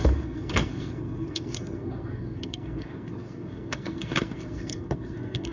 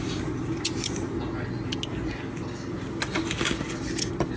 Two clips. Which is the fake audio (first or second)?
first